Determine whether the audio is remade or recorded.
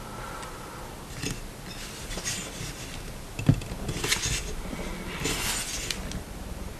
recorded